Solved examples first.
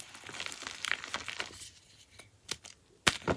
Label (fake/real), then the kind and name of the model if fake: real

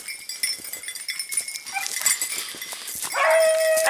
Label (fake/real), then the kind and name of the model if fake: real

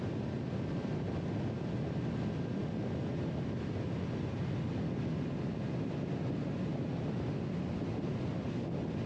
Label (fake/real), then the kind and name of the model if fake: real